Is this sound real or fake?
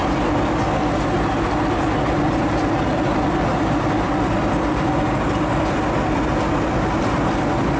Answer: real